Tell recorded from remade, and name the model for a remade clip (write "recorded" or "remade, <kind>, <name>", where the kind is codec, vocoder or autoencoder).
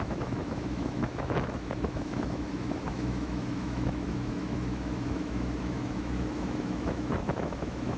remade, autoencoder, DAC-VAE